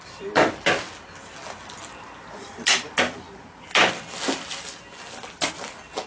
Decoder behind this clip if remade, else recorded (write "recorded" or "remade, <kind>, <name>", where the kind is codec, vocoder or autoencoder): recorded